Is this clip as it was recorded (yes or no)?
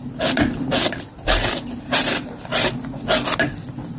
yes